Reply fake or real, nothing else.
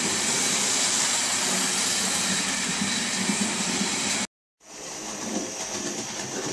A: real